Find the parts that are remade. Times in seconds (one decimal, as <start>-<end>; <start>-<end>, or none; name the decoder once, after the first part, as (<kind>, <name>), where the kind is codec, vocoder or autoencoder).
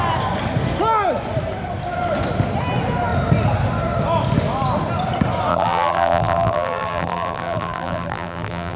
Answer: 5.5-8.8 (vocoder, BigVGAN v2)